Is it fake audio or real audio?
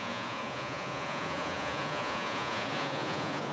fake